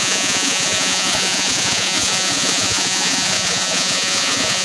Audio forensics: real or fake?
fake